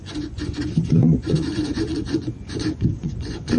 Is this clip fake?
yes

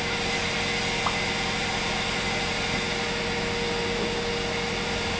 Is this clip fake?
no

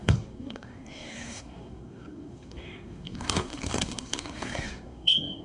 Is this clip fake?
yes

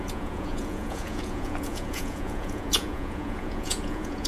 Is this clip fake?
yes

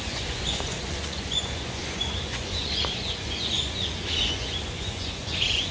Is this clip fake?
yes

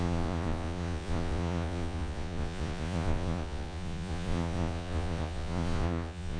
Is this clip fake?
yes